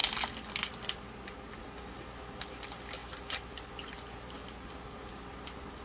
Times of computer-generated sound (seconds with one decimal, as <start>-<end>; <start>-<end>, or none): none